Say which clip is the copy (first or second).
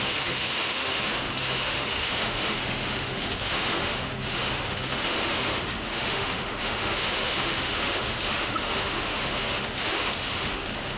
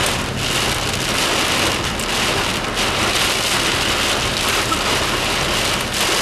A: first